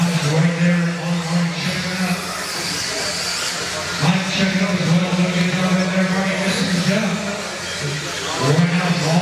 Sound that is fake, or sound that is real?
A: real